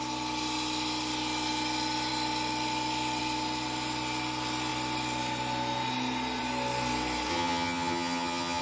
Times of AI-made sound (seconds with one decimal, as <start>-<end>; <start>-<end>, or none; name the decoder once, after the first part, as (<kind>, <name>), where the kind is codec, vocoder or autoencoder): 7.3-8.6 (vocoder, HiFi-GAN)